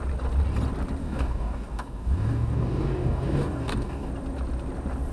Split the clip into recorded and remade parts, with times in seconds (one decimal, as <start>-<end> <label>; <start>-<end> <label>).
0.0-1.0 recorded; 1.0-4.1 remade; 4.1-5.1 recorded